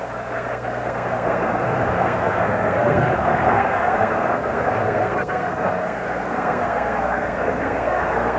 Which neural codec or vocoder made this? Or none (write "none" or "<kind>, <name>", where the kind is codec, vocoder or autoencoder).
codec, SNAC